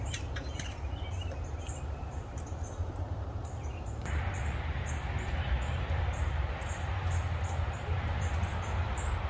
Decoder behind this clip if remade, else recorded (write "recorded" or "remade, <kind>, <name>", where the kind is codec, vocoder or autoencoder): remade, vocoder, BigVGAN v2